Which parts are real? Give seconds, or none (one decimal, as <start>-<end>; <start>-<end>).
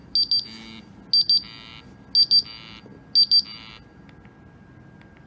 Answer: 0.0-5.3